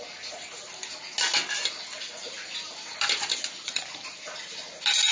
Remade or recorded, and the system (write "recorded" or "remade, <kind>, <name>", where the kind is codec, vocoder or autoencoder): recorded